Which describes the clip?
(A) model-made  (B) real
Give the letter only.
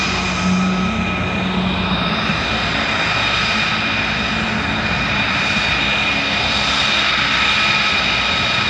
B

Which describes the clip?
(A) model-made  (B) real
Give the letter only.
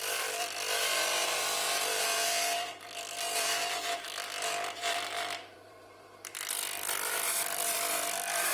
A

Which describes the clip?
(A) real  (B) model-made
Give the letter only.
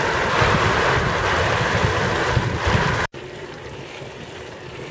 B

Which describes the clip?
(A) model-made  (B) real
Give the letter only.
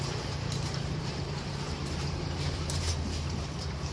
A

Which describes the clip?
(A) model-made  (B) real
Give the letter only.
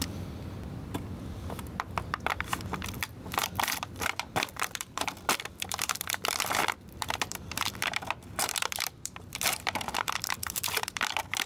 A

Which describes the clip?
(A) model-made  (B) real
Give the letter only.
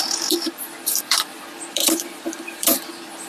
A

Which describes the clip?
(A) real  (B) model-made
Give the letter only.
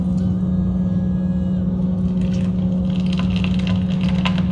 A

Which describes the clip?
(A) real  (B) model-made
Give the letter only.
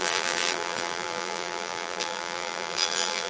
B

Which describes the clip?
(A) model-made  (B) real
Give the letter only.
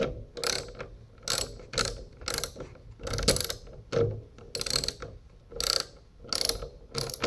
B